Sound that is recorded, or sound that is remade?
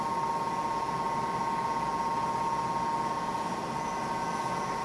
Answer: recorded